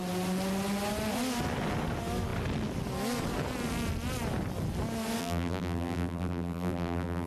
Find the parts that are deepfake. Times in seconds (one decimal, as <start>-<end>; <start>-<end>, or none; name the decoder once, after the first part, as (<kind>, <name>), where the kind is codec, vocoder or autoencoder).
5.2-7.3 (vocoder, BigVGAN v2)

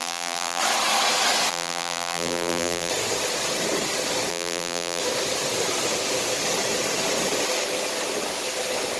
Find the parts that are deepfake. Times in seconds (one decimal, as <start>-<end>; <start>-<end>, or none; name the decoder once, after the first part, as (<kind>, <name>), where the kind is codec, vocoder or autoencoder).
0.0-0.6 (vocoder, BigVGAN v2); 1.5-2.9; 4.3-5.0

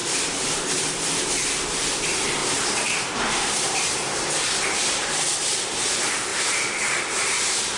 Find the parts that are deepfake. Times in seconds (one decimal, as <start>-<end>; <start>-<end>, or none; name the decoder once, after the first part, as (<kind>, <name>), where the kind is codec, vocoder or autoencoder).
0.0-1.2 (vocoder, BigVGAN v2); 2.4-5.7; 6.3-7.8